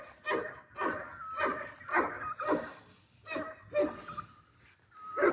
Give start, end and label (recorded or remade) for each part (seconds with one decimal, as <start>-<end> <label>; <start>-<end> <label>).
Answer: 0.0-5.3 recorded

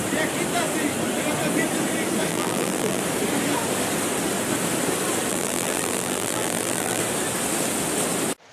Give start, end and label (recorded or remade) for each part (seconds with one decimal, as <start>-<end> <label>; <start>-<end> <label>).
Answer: 0.0-2.3 recorded; 2.3-3.0 remade; 3.0-5.3 recorded; 5.3-7.0 remade; 7.0-8.5 recorded

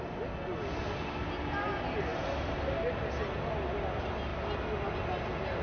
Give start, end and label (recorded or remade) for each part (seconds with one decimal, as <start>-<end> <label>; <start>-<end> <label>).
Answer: 0.0-5.6 recorded

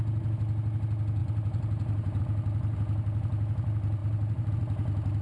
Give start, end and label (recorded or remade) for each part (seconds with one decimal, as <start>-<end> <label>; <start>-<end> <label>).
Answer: 0.0-1.2 recorded; 1.2-2.2 remade; 2.2-4.0 recorded; 4.0-4.5 remade; 4.5-5.2 recorded

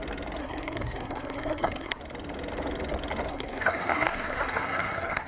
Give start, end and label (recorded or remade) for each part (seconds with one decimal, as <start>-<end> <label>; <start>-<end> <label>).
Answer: 0.0-0.4 recorded; 0.4-2.0 remade; 2.0-3.3 recorded; 3.3-5.3 remade

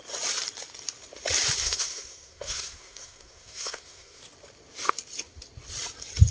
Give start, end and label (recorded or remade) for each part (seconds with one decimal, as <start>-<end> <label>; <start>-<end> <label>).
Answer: 0.0-1.6 recorded; 1.6-4.2 remade; 4.2-6.3 recorded

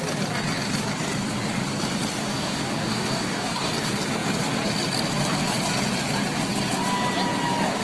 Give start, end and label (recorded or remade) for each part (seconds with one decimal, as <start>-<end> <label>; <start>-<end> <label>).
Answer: 0.0-2.2 recorded; 2.2-3.7 remade; 3.7-7.8 recorded

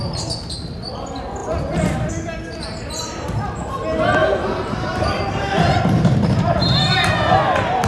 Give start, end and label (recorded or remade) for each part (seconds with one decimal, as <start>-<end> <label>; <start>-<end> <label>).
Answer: 0.0-1.4 recorded; 1.4-2.1 remade; 2.1-4.2 recorded; 4.2-7.1 remade; 7.1-7.9 recorded